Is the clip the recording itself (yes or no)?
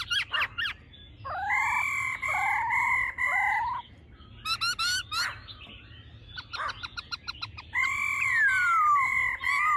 yes